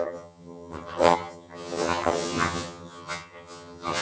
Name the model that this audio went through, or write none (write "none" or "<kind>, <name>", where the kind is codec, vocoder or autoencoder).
vocoder, HiFi-GAN